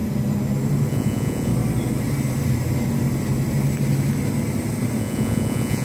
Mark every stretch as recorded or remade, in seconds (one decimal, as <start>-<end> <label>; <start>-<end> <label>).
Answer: 0.0-0.9 recorded; 0.9-1.5 remade; 1.5-5.0 recorded; 5.0-5.8 remade

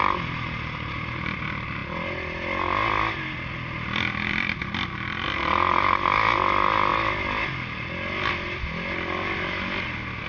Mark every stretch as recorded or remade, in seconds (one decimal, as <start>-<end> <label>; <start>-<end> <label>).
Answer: 0.0-10.3 recorded